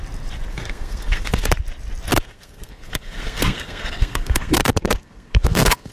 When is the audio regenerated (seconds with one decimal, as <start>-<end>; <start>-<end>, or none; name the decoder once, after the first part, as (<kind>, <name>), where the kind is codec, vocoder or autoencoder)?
0.5-1.5 (codec, SNAC); 2.1-5.9